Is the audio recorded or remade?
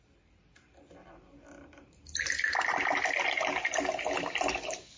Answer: recorded